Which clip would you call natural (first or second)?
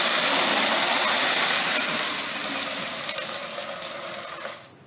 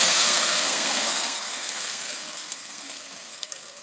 first